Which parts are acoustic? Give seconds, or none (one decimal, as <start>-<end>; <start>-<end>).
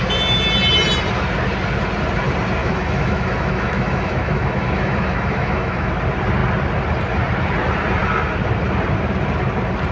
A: 0.0-2.6; 5.9-9.9